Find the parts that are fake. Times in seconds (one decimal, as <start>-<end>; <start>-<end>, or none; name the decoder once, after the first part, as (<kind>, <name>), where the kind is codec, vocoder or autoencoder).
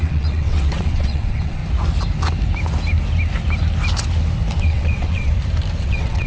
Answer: 0.0-1.6 (vocoder, WaveNeXt); 4.6-5.3; 5.8-6.3